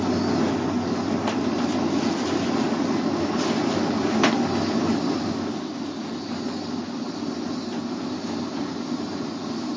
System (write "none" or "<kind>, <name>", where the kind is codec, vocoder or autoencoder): none